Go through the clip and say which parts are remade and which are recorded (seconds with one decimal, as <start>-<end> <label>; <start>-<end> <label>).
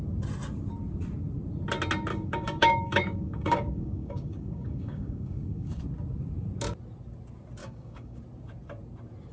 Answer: 0.0-2.1 recorded; 2.1-5.8 remade; 5.8-7.6 recorded; 7.6-8.2 remade; 8.2-9.3 recorded